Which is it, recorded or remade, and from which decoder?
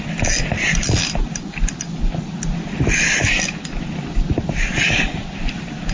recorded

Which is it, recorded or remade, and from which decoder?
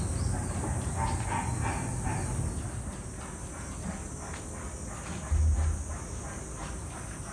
recorded